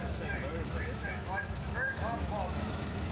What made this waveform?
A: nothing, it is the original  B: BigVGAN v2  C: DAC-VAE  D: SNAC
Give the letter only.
C